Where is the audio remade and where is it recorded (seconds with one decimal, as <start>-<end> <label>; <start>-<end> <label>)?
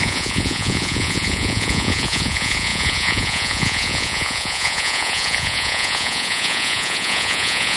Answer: 0.0-7.8 remade